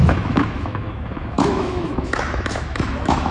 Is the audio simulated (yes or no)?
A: yes